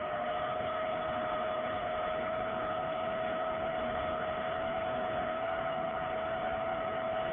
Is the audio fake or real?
fake